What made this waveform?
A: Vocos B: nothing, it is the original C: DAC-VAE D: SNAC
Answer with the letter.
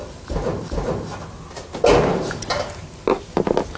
B